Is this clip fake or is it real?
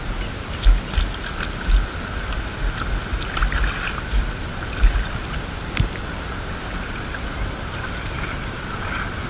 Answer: real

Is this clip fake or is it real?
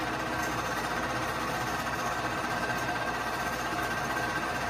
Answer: fake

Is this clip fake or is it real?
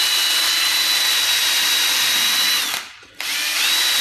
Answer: real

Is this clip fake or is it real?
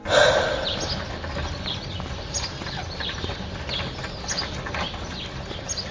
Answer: real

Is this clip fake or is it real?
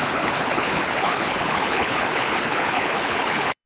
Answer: fake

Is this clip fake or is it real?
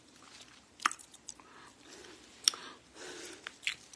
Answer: real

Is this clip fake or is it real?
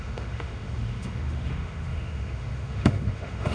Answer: fake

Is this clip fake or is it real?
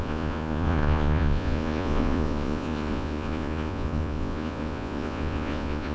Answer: fake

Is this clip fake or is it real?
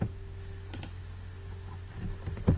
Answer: real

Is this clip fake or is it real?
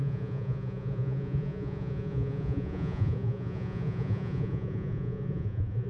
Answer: fake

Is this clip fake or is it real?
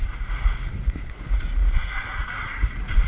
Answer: fake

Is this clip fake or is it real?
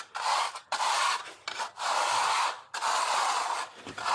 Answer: real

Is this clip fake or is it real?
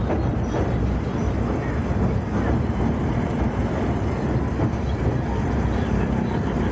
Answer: real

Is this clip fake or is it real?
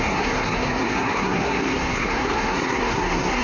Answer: fake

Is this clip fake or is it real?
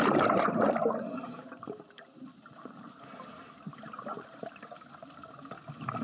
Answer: real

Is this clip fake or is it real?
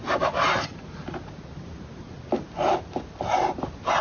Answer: real